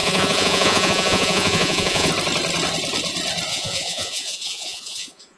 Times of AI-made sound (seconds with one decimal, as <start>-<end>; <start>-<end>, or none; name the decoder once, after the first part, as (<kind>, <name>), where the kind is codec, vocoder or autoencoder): 0.0-2.1 (vocoder, Vocos); 3.5-5.4